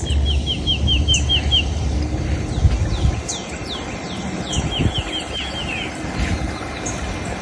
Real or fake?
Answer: real